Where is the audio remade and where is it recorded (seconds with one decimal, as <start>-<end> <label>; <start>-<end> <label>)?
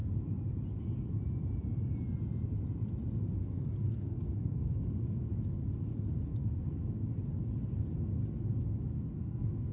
0.0-3.4 recorded; 3.4-5.2 remade; 5.2-6.3 recorded; 6.3-6.8 remade; 6.8-9.1 recorded; 9.1-9.7 remade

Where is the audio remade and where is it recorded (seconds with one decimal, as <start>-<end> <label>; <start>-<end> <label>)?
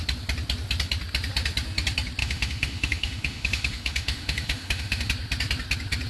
0.0-2.2 recorded; 2.2-5.1 remade; 5.1-6.1 recorded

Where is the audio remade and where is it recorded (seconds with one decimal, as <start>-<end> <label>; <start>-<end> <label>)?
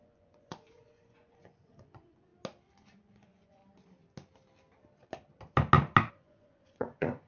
0.0-2.3 remade; 2.3-2.8 recorded; 2.8-3.6 remade; 3.6-6.1 recorded; 6.1-7.3 remade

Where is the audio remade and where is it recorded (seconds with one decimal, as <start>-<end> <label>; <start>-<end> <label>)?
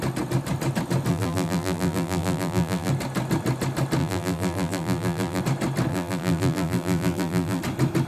0.0-1.1 recorded; 1.1-2.9 remade; 2.9-4.0 recorded; 4.0-5.4 remade; 5.4-5.9 recorded; 5.9-7.6 remade; 7.6-8.1 recorded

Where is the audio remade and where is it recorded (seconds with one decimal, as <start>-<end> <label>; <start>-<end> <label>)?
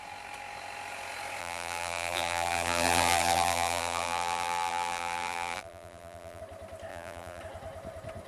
0.0-1.4 recorded; 1.4-6.4 remade; 6.4-6.9 recorded; 6.9-7.4 remade; 7.4-8.3 recorded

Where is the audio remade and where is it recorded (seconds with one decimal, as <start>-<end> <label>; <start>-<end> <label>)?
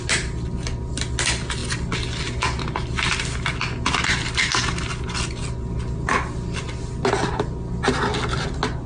0.0-8.9 recorded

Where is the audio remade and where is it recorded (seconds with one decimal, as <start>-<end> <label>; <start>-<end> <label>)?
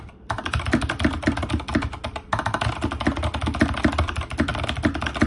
0.0-1.7 remade; 1.7-3.8 recorded; 3.8-4.5 remade; 4.5-5.3 recorded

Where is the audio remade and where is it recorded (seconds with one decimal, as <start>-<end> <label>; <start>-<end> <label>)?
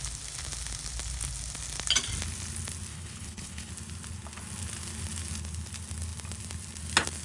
0.0-2.9 recorded; 2.9-3.7 remade; 3.7-7.2 recorded